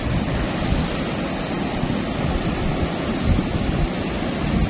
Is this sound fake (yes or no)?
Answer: no